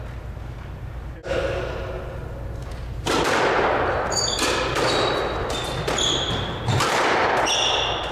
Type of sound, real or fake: real